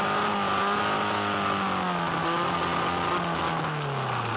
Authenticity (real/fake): real